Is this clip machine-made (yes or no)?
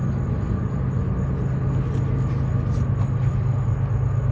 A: no